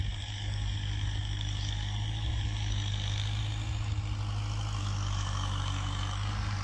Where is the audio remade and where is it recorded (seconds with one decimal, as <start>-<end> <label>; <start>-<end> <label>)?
0.0-3.4 remade; 3.4-4.8 recorded; 4.8-6.6 remade